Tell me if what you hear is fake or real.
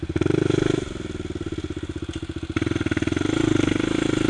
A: real